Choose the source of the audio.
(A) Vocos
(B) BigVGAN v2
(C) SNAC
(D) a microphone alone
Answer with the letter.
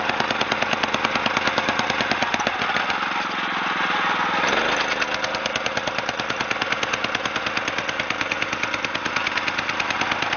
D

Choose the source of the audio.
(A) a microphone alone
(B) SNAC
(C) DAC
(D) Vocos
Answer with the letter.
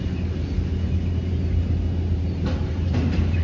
A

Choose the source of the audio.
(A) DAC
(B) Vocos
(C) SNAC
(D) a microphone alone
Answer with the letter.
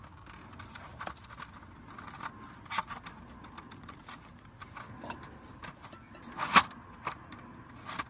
D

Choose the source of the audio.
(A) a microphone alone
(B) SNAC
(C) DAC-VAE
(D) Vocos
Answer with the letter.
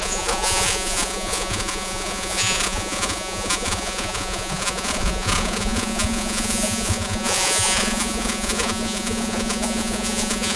D